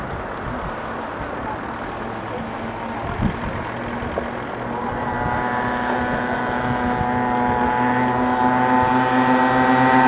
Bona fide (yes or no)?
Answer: yes